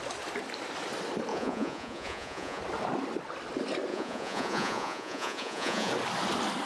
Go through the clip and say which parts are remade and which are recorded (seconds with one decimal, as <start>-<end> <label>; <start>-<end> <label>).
0.0-1.3 recorded; 1.3-2.6 remade; 2.6-3.9 recorded; 3.9-5.9 remade; 5.9-6.7 recorded